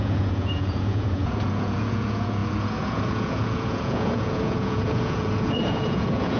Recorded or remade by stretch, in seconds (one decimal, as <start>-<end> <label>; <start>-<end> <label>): 0.0-6.4 remade